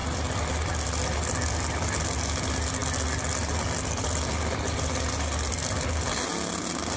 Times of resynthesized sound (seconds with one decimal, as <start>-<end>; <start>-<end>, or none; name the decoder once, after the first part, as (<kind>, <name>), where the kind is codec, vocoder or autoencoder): none